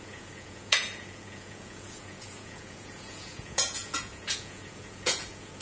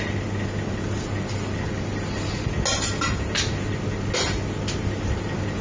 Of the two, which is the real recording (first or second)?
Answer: second